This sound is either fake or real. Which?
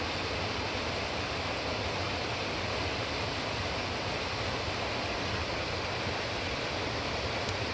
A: real